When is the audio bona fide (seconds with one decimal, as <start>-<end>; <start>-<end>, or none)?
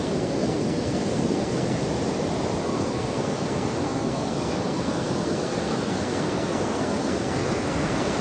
1.8-2.6